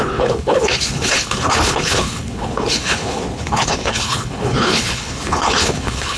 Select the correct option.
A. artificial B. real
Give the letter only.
A